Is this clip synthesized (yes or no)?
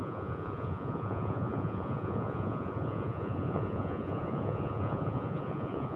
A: yes